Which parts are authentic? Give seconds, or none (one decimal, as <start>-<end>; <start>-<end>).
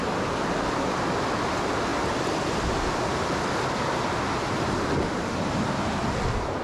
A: 0.0-6.6